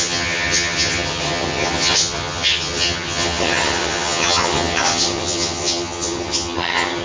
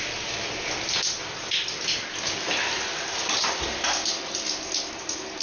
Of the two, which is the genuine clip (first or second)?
second